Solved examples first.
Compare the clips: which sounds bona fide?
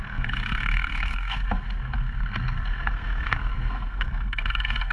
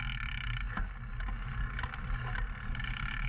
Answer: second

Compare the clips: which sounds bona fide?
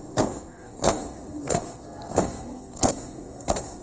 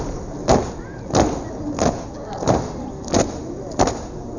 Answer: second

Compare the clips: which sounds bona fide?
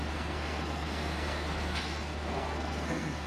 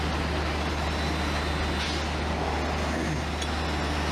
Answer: second